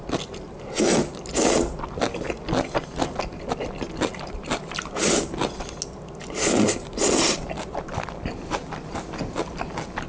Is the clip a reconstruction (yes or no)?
no